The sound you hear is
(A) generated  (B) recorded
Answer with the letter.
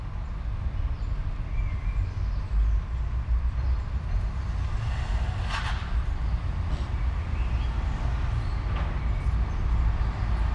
B